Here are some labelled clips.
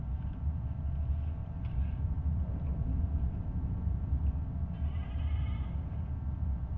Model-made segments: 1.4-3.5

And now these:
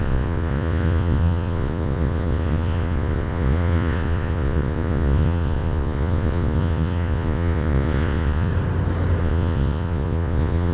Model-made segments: 0.0-8.5; 9.2-10.7

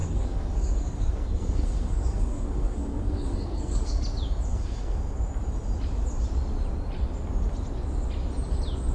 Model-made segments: 0.0-4.0; 4.5-5.0

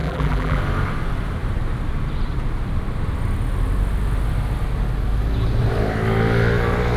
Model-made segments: 0.0-0.6

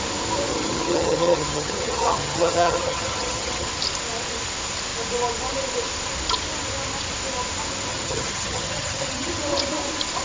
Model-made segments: 0.5-3.7; 7.9-9.3

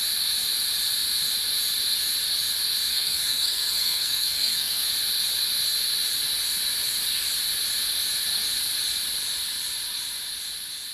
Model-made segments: 2.9-4.9

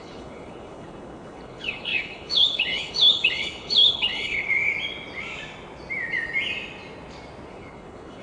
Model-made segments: 0.0-4.5; 7.5-8.2

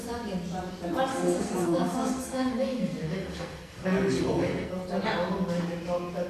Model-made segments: 1.1-4.7